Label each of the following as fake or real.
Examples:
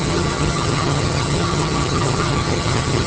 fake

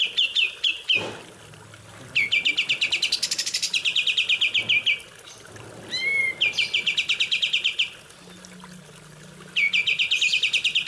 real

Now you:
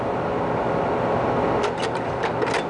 real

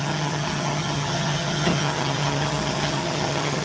fake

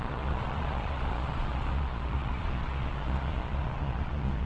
fake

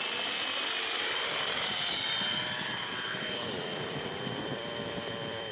real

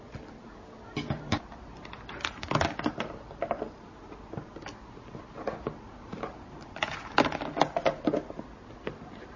real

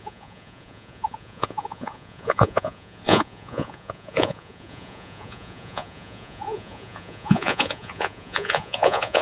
fake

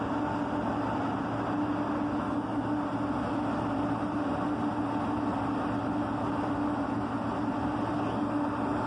real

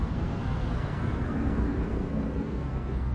fake